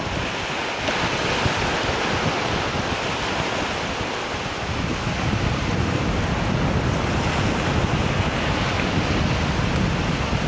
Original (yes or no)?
yes